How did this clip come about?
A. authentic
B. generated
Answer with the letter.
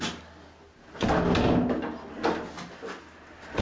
A